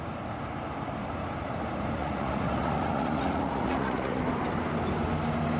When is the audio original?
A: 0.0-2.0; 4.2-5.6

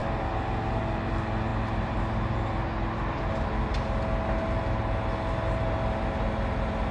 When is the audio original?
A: 0.0-6.9

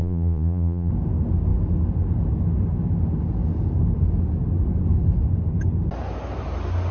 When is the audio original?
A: 0.9-6.9

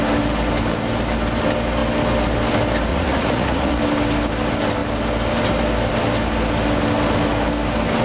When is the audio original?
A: 0.0-2.9; 3.8-8.0